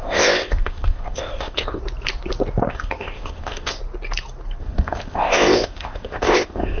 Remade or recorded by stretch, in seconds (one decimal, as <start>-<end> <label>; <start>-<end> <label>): 0.0-1.8 remade; 1.8-2.7 recorded; 2.7-3.8 remade; 3.8-4.6 recorded; 4.6-6.8 remade